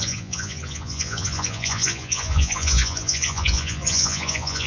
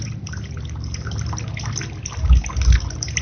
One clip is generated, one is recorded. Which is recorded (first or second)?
second